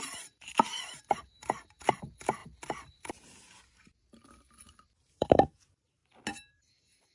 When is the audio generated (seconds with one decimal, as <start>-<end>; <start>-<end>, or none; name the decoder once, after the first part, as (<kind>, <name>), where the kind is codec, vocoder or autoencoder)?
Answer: 0.0-0.7 (vocoder, BigVGAN v2); 1.2-2.4; 5.1-6.0; 6.5-7.1